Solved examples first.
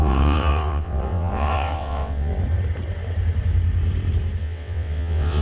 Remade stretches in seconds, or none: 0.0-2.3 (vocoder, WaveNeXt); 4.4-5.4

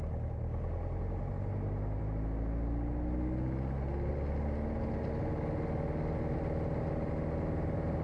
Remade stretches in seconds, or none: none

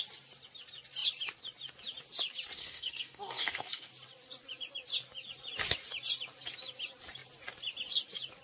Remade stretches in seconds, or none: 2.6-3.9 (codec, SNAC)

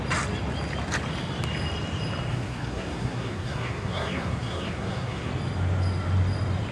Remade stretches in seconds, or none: 2.3-5.3 (codec, SNAC)

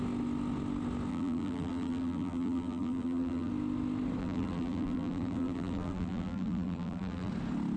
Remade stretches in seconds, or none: 1.1-3.5 (vocoder, BigVGAN v2); 4.2-7.3